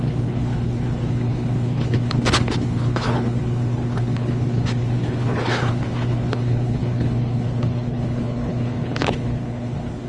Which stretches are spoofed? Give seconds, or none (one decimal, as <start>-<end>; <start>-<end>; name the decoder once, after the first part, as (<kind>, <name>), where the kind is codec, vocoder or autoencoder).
0.0-10.1 (codec, HILCodec)